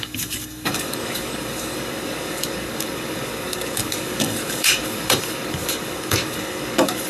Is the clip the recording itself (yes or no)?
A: no